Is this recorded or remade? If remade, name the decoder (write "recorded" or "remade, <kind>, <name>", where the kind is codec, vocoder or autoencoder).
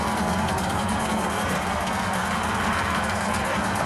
remade, codec, SNAC